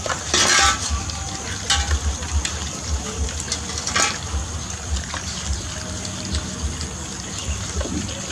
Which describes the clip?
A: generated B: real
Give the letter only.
B